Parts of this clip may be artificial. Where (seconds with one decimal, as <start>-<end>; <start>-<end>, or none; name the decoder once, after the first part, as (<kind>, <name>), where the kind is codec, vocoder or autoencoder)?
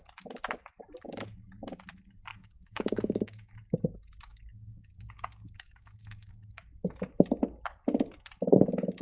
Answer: 2.3-3.5 (codec, DAC); 4.3-6.6